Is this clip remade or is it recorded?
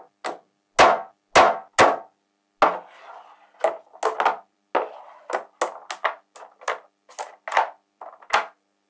recorded